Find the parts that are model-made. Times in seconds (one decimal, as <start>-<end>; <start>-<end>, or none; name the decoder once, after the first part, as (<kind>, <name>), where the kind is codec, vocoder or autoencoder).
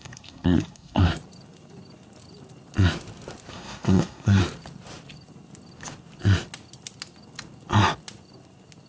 0.0-1.1 (codec, SNAC); 3.5-4.4